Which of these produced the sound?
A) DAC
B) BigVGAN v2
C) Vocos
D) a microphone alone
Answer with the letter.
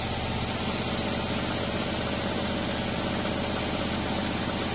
D